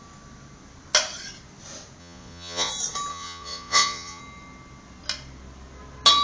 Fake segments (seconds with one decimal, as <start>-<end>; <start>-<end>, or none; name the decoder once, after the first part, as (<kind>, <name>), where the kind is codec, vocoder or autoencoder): 2.0-2.7 (vocoder, Vocos); 3.1-4.2

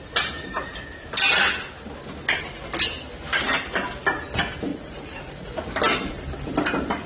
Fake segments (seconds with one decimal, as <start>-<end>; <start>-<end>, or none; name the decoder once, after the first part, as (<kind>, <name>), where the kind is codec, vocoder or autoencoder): 4.7-5.7 (vocoder, Vocos)

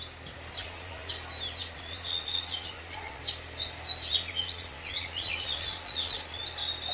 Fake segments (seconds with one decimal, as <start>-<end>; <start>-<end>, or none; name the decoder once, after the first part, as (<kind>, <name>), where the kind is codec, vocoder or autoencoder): 0.6-1.1 (vocoder, Vocos); 1.6-3.2; 4.1-6.4

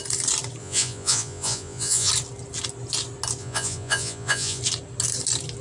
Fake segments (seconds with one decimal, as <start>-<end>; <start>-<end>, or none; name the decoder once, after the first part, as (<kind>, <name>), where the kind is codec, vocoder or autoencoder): 0.6-2.1 (vocoder, Vocos); 3.4-4.6

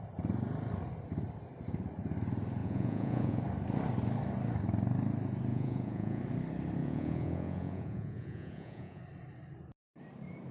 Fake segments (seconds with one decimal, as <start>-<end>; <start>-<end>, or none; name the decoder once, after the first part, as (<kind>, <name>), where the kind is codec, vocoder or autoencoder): 2.6-3.4 (vocoder, Vocos); 5.5-6.2; 6.8-9.0

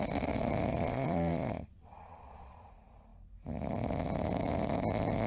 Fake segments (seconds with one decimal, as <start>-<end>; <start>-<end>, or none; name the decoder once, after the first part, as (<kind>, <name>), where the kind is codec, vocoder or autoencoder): 0.7-2.7 (vocoder, Vocos)

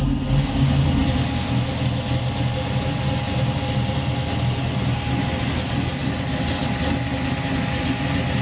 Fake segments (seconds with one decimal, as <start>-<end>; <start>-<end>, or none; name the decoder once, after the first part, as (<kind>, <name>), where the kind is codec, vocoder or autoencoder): none

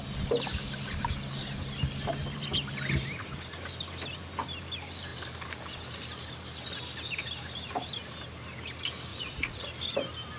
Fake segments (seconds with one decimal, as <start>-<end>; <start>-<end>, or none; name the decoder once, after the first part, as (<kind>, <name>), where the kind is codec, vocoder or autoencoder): 9.1-9.7 (vocoder, Vocos)